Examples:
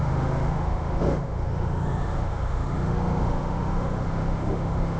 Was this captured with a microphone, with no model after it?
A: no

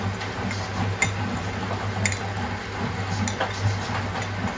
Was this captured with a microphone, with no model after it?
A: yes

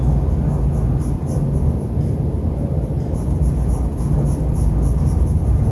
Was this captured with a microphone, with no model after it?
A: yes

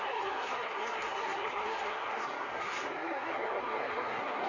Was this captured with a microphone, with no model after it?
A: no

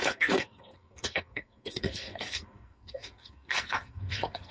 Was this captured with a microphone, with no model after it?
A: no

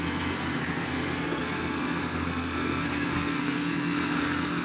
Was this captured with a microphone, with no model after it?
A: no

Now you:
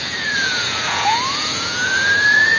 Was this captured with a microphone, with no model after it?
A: no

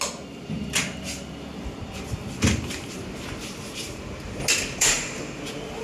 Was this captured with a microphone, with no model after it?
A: yes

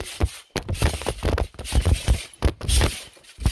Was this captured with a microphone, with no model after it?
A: yes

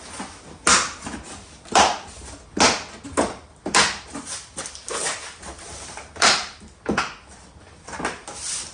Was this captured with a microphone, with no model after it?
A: yes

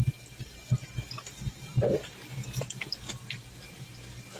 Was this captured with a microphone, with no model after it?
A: yes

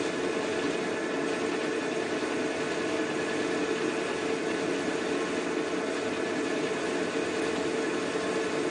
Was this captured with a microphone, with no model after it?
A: yes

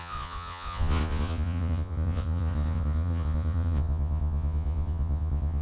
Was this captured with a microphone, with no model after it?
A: no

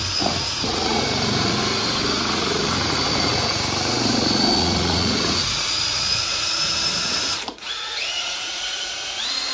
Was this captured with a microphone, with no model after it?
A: no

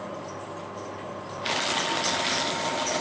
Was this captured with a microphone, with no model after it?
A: yes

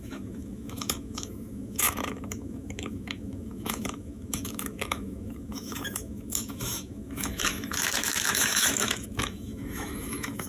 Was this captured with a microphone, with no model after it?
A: no